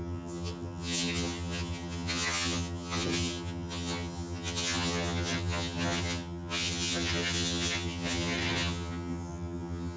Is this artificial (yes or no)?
yes